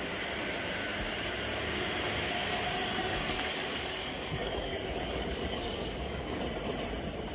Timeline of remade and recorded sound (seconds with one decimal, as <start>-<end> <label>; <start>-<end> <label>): 0.0-3.0 recorded; 3.0-6.4 remade; 6.4-7.3 recorded